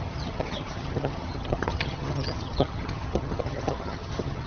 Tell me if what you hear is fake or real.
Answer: fake